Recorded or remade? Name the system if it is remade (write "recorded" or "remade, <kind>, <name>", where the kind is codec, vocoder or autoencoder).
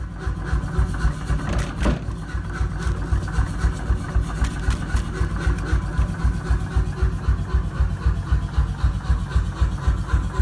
recorded